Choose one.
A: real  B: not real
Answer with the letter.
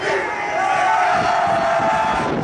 A